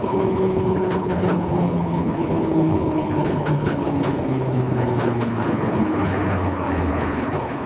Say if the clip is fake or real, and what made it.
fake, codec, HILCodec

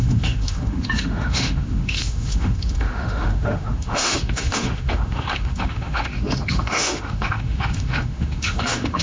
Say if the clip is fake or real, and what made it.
fake, autoencoder, DAC-VAE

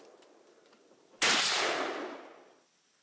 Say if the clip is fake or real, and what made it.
real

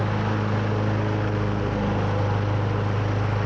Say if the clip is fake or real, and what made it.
real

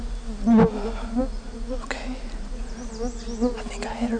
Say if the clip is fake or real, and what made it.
real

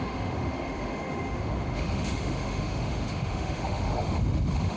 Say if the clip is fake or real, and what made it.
fake, autoencoder, DAC-VAE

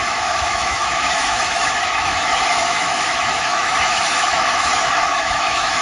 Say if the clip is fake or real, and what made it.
fake, autoencoder, DAC-VAE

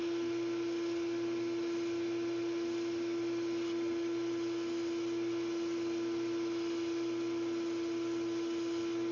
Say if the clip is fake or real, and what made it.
real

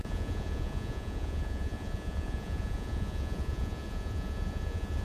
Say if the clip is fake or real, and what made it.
fake, vocoder, Vocos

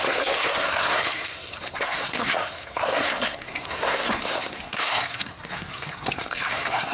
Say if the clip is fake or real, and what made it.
fake, codec, SNAC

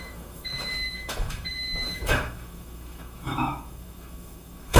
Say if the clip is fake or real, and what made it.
fake, autoencoder, DAC-VAE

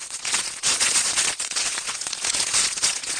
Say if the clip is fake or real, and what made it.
fake, vocoder, Vocos